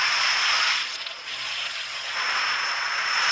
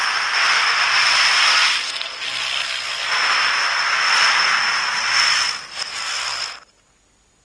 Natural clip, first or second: second